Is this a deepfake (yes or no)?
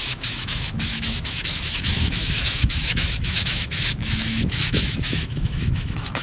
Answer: yes